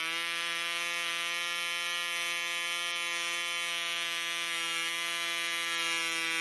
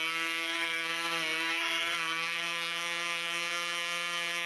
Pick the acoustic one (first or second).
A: first